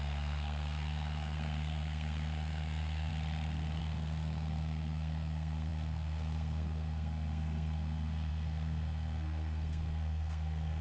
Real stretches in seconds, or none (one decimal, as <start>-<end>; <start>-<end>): 3.1-3.8